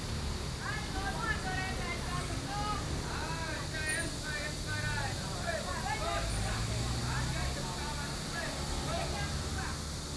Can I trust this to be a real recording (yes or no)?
yes